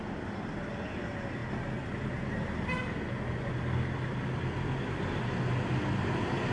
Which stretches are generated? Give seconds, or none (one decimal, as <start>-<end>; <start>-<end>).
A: none